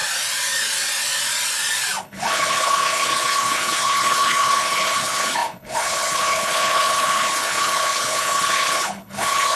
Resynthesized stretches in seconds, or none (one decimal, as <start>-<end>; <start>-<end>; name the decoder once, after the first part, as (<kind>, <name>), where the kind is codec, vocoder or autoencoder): 2.0-9.6 (codec, HILCodec)

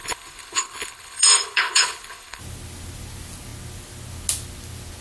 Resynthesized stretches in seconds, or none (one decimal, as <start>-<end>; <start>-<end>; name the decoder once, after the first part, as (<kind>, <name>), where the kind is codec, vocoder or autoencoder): 0.0-2.4 (codec, HILCodec)

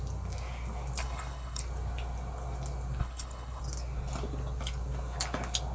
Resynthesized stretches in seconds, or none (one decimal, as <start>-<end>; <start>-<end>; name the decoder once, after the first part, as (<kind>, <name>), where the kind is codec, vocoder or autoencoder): 1.0-1.6 (codec, HILCodec); 3.0-3.6